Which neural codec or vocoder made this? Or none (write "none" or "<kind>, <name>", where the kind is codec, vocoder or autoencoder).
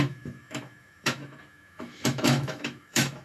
autoencoder, DAC-VAE